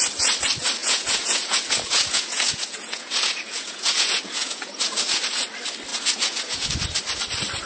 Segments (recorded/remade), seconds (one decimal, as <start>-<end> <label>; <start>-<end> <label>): 0.0-0.8 recorded; 0.8-5.2 remade; 5.2-5.9 recorded; 5.9-6.7 remade; 6.7-7.7 recorded